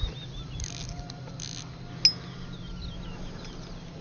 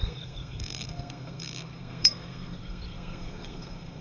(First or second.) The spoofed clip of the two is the second